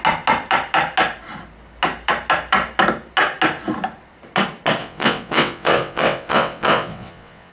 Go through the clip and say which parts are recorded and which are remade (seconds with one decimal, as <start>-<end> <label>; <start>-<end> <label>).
0.0-4.8 recorded; 4.8-7.5 remade